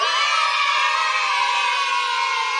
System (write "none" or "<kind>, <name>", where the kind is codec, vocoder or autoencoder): none